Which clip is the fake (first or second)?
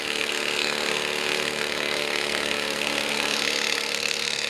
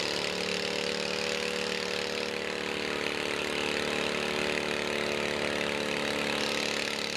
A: first